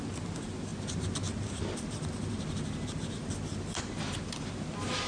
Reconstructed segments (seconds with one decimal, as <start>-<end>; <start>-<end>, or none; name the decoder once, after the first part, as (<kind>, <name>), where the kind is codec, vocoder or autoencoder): none